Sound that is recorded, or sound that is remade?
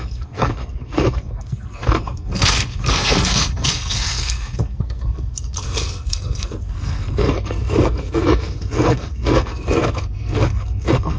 remade